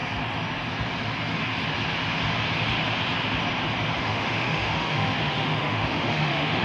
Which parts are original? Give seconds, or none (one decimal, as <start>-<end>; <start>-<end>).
0.0-4.0